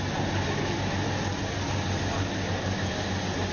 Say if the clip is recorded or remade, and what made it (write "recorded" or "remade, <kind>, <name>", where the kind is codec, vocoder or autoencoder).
recorded